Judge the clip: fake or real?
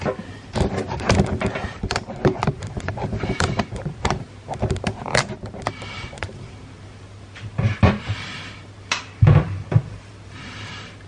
fake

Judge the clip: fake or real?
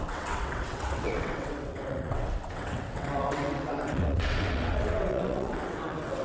fake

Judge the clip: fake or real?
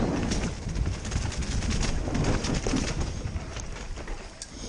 real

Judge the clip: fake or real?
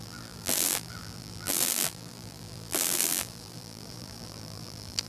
fake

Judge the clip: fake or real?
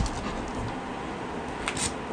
real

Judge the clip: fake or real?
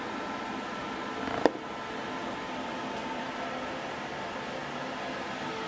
real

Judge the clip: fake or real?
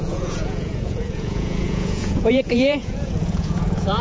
fake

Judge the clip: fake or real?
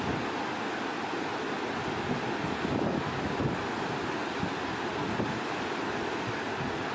real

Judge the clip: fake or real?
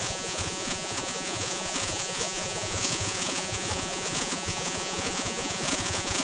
fake